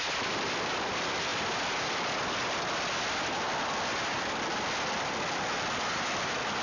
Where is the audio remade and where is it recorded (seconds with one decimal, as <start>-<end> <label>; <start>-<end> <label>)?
0.0-1.3 remade; 1.3-5.1 recorded; 5.1-6.6 remade